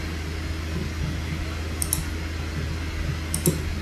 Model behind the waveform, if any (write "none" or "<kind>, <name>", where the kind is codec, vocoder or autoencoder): none